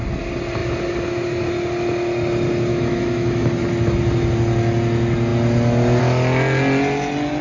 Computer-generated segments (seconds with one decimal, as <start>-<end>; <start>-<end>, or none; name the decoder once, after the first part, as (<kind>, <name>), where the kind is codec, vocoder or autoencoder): 2.7-3.5 (autoencoder, DAC-VAE)